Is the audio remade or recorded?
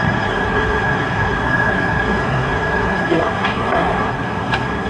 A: remade